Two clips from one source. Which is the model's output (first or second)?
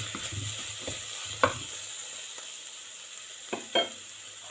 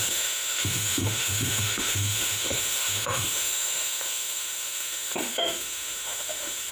second